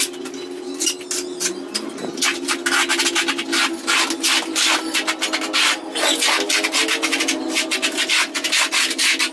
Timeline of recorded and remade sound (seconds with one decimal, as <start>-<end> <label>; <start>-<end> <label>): 0.0-9.3 recorded